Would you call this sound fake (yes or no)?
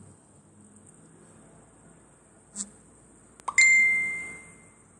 no